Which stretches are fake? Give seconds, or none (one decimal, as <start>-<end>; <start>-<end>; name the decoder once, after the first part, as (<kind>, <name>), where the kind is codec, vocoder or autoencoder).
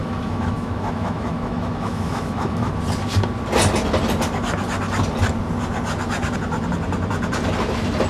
0.0-2.7 (autoencoder, DAC-VAE)